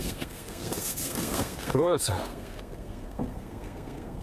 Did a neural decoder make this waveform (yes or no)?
yes